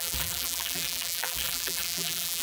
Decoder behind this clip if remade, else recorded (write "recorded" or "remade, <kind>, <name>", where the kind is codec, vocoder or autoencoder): remade, vocoder, BigVGAN v2